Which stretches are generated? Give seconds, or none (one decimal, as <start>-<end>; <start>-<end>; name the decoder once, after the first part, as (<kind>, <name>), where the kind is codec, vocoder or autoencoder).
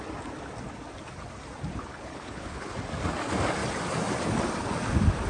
1.9-2.7 (codec, HILCodec)